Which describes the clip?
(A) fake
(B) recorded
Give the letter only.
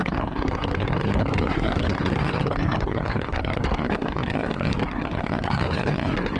A